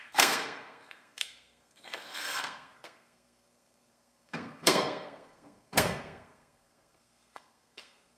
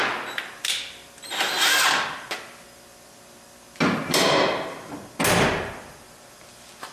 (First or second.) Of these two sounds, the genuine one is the second